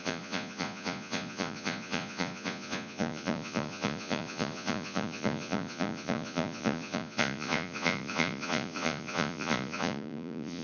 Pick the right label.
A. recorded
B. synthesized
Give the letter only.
B